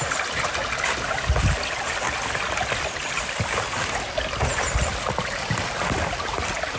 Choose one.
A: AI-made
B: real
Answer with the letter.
B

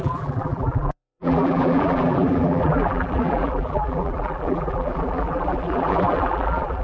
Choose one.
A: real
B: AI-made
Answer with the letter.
B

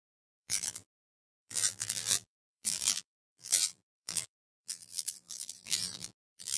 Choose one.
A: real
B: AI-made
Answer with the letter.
B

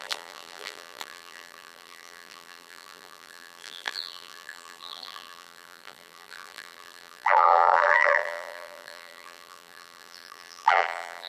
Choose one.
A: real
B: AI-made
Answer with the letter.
B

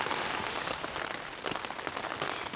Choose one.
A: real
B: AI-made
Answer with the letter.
A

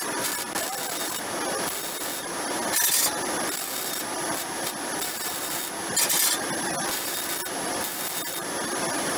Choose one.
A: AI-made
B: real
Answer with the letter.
B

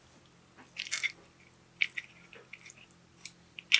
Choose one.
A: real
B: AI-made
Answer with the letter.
A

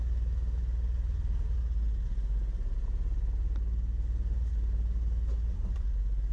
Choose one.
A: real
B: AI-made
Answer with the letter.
A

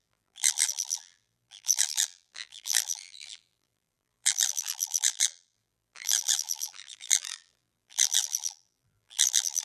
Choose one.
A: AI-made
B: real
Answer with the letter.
A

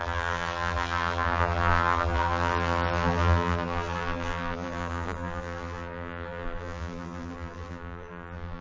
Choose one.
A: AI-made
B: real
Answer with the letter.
A